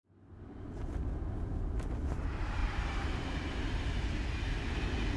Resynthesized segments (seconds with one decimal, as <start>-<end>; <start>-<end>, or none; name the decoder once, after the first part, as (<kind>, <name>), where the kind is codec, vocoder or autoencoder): 2.6-3.8 (vocoder, BigVGAN v2)